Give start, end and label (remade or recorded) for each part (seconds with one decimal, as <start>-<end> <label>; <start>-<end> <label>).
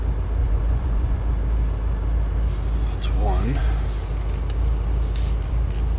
0.0-0.4 recorded; 0.4-1.3 remade; 1.3-6.0 recorded